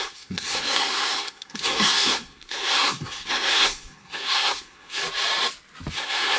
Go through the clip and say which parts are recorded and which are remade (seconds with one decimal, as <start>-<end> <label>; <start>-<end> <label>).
0.0-5.0 remade; 5.0-5.9 recorded; 5.9-6.4 remade